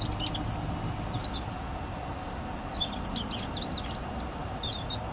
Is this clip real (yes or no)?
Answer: yes